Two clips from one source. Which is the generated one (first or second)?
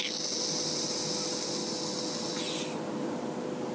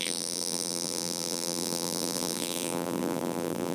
second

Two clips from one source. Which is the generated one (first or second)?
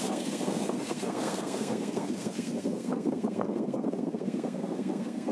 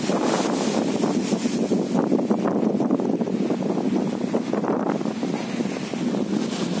first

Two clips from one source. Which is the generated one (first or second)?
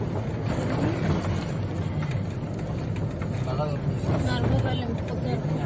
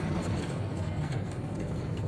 second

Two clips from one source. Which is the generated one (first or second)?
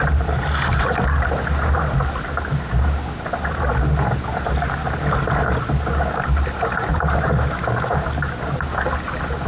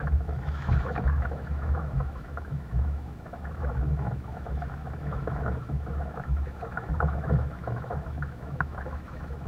second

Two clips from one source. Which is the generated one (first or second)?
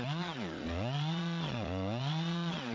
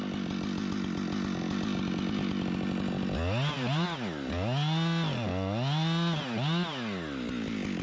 first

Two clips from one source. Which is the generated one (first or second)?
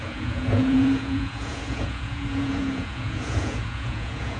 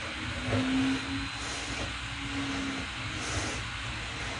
first